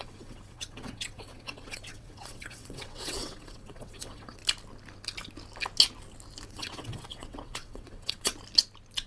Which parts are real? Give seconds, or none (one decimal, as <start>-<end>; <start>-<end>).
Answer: 4.4-6.5; 8.3-9.1